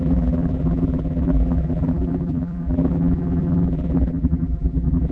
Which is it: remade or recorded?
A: remade